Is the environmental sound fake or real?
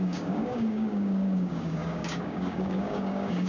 fake